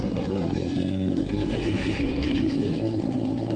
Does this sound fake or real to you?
fake